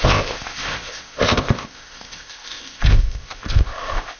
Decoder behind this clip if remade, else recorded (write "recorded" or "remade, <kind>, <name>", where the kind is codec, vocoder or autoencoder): remade, codec, ZipCodec